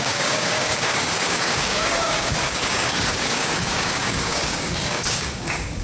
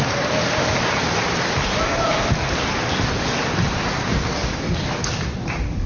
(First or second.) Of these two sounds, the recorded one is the second